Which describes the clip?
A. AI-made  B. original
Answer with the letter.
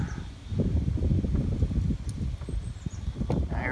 B